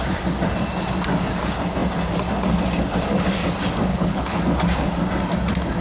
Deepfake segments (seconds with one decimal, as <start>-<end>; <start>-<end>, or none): 3.9-4.4